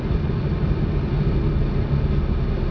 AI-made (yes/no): no